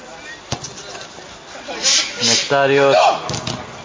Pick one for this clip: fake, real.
real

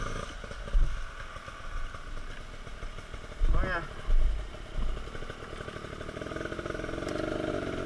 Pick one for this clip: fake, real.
real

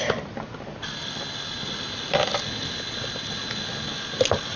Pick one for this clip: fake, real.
real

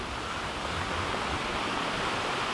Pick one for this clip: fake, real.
real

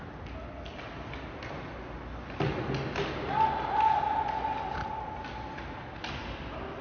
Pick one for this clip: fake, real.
real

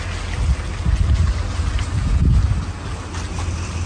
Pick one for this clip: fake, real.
real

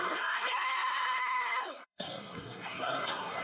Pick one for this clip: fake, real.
fake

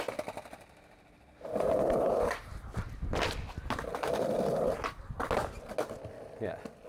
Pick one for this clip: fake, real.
real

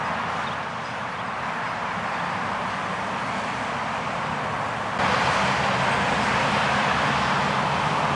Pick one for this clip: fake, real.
real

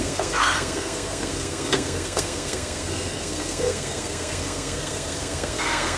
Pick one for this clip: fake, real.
fake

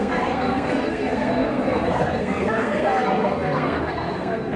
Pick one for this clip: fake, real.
fake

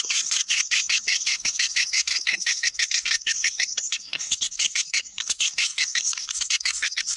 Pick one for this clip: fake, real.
fake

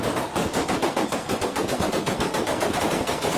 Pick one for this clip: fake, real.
fake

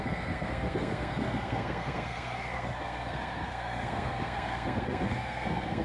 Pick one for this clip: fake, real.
fake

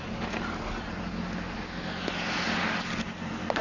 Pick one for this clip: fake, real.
real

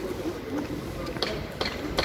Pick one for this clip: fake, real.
real